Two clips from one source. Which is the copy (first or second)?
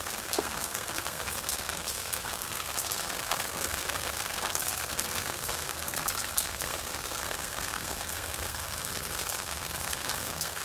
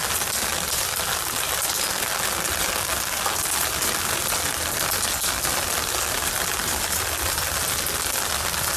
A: first